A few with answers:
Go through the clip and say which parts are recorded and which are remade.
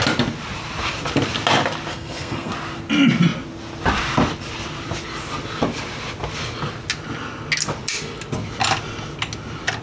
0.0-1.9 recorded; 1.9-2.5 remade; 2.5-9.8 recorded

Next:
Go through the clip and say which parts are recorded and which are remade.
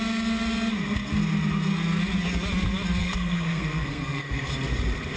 0.0-3.0 recorded; 3.0-4.5 remade; 4.5-5.2 recorded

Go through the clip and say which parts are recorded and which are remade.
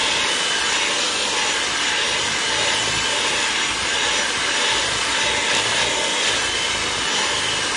0.0-7.8 recorded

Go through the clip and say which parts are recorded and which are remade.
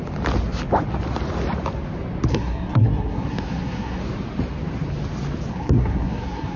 0.0-2.3 recorded; 2.3-4.0 remade; 4.0-5.5 recorded; 5.5-6.6 remade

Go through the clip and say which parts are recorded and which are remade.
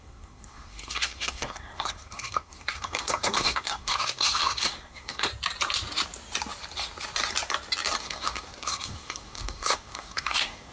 0.0-5.3 remade; 5.3-8.0 recorded; 8.0-10.7 remade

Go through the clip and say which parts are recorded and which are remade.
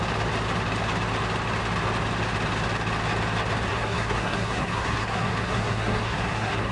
0.0-3.7 recorded; 3.7-6.7 remade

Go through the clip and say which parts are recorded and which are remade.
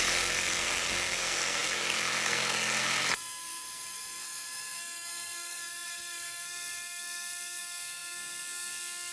0.0-9.1 remade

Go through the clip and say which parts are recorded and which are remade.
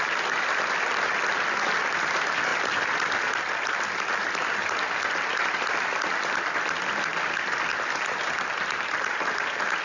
0.0-9.8 recorded